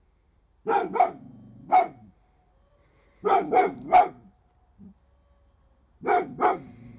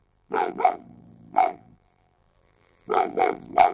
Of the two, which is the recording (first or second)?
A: first